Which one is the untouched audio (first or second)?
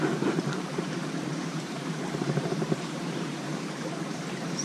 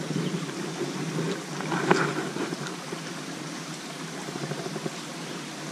second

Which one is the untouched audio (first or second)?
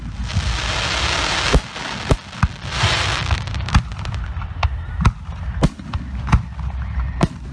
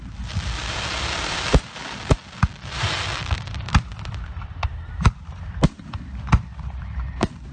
first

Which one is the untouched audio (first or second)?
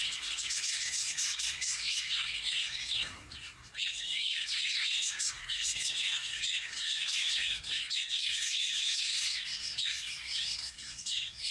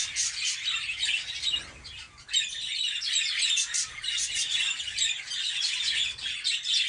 second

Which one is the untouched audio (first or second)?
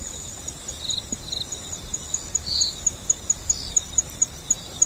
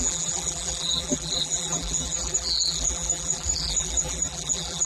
first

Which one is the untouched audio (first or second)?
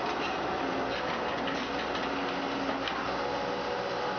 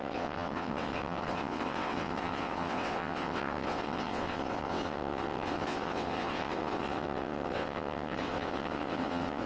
first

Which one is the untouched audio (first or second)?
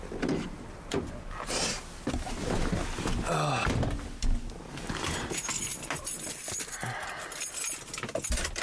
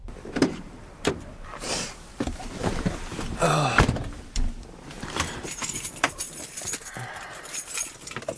first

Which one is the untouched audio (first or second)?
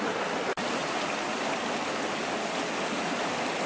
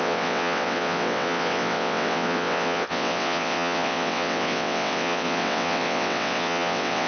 first